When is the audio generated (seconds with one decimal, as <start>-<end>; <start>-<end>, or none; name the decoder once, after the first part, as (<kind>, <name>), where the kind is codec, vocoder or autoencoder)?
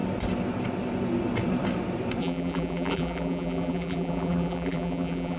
2.2-5.4 (vocoder, BigVGAN v2)